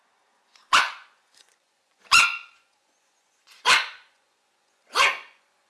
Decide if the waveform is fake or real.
fake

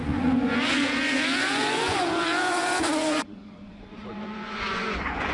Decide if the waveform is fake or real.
fake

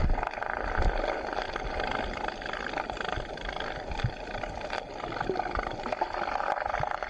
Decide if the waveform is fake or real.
real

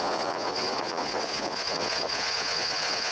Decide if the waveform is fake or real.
fake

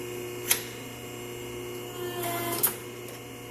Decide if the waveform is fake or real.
real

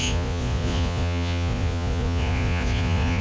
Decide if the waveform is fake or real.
fake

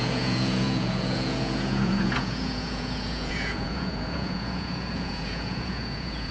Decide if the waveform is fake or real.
fake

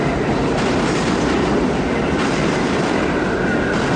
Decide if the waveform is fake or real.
real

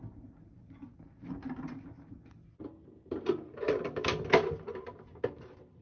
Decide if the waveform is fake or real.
real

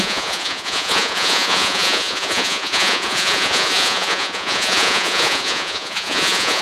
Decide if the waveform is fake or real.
fake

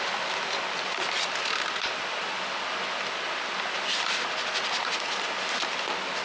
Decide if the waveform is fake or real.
real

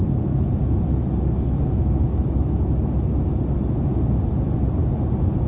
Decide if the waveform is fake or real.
real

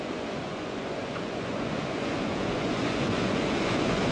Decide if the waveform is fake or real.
fake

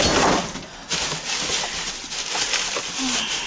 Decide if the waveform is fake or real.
real